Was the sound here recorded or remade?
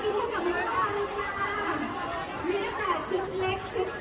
remade